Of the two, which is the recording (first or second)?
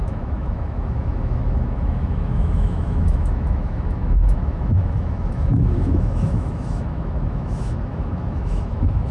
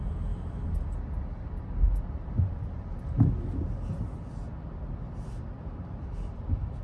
second